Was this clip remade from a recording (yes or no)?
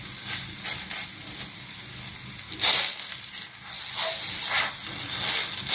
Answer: no